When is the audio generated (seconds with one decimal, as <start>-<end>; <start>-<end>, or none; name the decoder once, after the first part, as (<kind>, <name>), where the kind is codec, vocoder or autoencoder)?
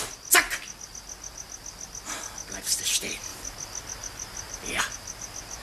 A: none